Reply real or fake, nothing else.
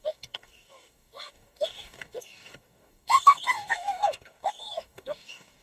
fake